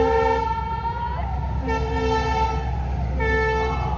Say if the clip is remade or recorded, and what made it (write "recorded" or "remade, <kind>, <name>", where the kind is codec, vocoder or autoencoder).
recorded